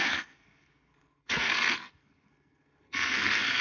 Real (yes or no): no